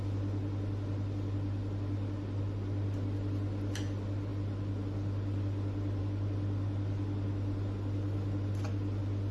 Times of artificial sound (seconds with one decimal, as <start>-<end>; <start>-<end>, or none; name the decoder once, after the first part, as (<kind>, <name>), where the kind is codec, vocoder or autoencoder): none